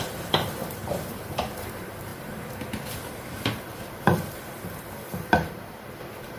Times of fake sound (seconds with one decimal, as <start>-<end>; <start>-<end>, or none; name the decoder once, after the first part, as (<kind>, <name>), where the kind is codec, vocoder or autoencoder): 0.0-6.4 (vocoder, BigVGAN v2)